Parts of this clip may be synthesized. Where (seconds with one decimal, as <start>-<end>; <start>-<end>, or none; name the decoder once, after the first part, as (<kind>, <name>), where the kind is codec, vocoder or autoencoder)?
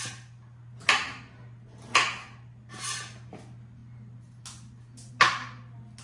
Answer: none